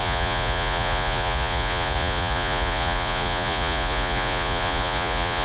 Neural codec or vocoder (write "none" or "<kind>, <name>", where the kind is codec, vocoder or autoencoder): vocoder, Vocos